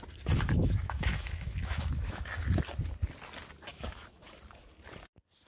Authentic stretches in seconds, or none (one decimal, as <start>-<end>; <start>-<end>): 0.0-0.6; 2.3-3.7; 4.4-5.5

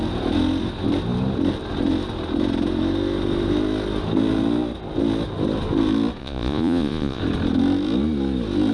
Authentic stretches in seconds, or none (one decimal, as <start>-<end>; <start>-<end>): 0.0-6.2; 7.2-8.7

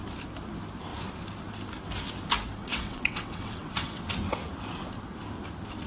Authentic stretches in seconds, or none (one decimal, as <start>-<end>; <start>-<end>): 0.0-2.6; 4.1-5.9

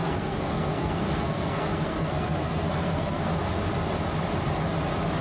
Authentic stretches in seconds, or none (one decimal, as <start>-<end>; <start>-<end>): 3.3-5.2

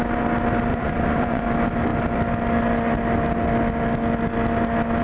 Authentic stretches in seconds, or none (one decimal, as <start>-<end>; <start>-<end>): 0.0-0.7; 1.4-5.0